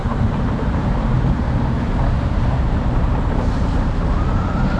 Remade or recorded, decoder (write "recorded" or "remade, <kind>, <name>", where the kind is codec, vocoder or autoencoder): remade, vocoder, BigVGAN v2